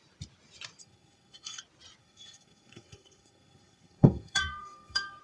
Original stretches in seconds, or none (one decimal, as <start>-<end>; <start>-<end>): 0.0-0.8; 1.6-2.0